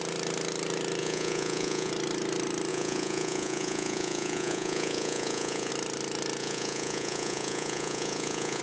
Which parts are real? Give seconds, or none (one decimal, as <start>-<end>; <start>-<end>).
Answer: 0.0-1.0; 1.9-2.7; 5.7-6.4